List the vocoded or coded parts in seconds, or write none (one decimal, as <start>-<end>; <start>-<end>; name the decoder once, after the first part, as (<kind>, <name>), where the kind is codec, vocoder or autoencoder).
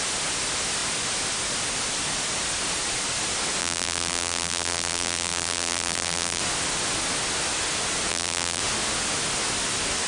3.6-6.4 (vocoder, BigVGAN v2); 8.1-8.6